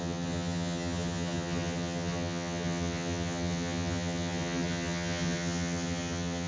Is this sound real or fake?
fake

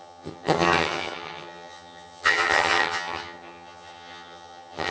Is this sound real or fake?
fake